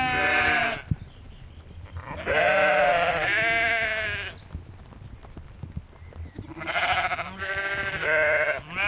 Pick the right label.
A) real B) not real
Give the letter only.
A